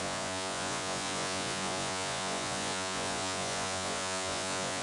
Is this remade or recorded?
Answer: remade